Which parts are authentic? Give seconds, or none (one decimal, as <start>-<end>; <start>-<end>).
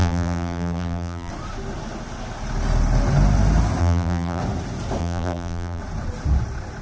1.3-3.8; 4.4-5.0; 5.8-6.8